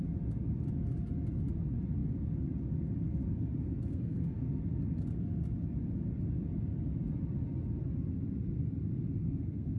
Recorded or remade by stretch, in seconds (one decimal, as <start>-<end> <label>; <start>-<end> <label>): 0.0-3.9 recorded; 3.9-4.6 remade; 4.6-9.2 recorded; 9.2-9.8 remade